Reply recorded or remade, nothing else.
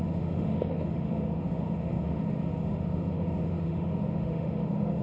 remade